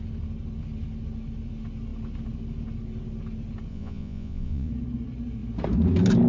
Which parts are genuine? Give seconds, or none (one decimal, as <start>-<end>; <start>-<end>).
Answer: 0.0-3.7; 4.7-6.3